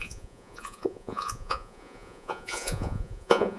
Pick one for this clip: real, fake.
fake